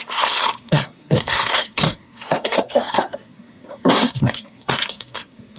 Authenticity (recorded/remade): remade